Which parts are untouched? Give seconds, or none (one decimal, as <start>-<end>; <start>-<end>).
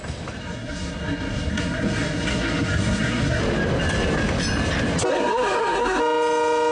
0.0-0.4; 3.4-5.1; 6.0-6.7